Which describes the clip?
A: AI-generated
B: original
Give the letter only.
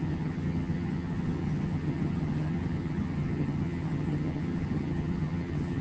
A